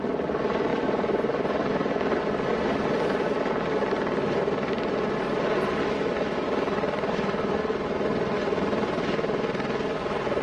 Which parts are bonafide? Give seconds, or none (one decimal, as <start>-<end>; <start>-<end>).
0.0-10.4